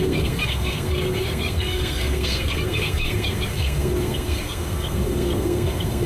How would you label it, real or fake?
fake